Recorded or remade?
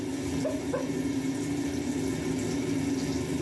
recorded